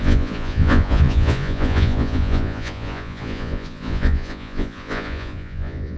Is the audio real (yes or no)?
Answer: no